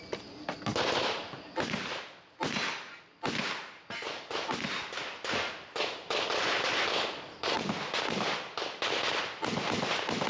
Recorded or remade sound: recorded